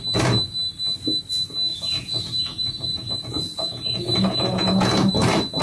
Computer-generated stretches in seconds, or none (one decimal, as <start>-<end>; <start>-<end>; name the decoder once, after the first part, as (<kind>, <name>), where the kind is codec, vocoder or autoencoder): 1.7-5.1 (vocoder, Vocos)